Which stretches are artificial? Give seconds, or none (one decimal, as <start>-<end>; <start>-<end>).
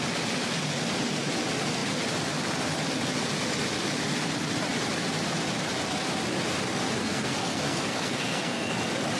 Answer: 7.0-8.7